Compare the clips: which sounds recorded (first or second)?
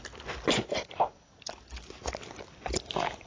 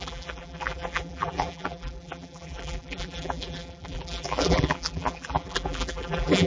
first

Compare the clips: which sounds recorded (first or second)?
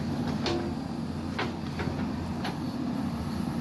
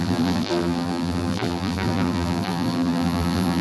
first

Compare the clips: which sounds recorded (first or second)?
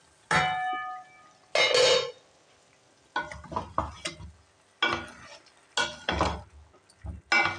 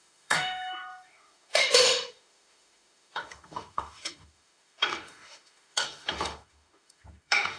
first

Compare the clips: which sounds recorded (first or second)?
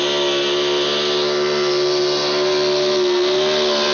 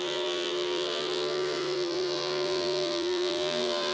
first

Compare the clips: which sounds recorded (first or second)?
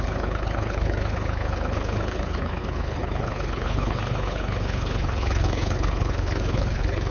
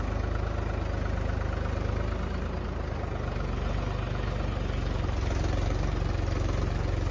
second